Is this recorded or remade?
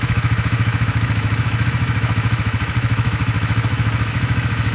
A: remade